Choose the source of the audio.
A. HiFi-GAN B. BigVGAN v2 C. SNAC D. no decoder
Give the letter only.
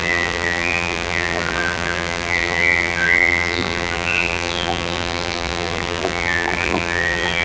B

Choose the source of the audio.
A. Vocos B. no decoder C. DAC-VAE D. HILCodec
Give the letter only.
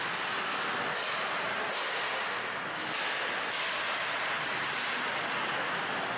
B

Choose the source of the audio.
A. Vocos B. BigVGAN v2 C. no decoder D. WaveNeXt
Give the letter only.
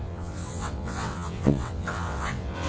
D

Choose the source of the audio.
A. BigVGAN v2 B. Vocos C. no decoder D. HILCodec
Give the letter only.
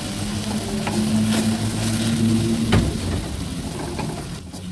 C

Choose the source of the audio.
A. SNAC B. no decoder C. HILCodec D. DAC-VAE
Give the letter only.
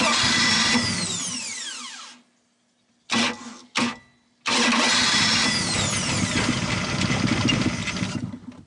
B